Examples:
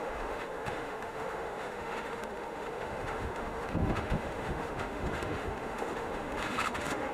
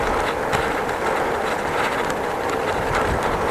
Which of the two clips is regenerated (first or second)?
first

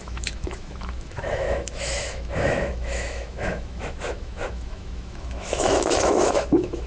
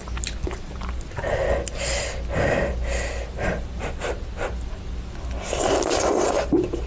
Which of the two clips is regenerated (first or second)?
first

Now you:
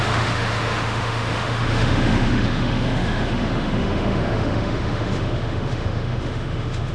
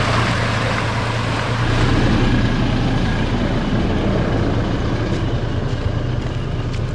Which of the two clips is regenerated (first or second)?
first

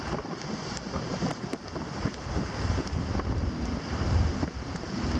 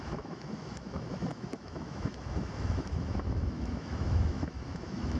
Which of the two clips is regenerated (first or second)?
second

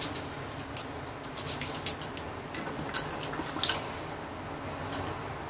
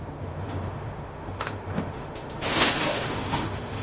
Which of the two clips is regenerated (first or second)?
second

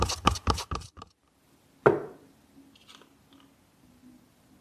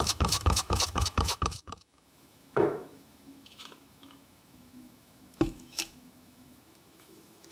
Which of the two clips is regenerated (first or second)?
second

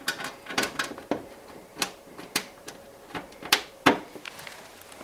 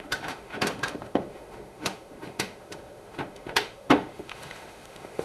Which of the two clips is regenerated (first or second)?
second